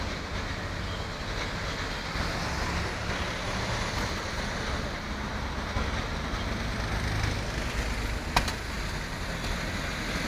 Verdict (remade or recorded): recorded